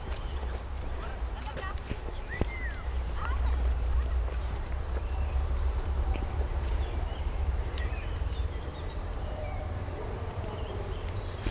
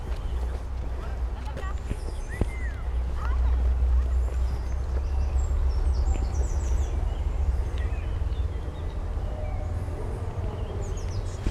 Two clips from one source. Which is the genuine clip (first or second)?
second